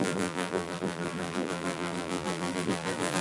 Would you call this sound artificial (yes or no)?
yes